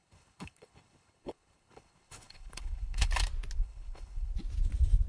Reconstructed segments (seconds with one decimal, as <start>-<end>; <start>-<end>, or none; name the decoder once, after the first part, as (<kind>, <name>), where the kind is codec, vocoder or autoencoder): 0.0-3.1 (codec, HILCodec); 3.6-4.3